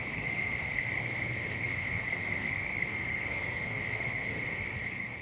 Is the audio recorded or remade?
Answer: remade